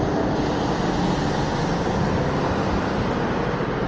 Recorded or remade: recorded